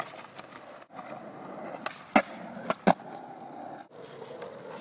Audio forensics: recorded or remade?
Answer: recorded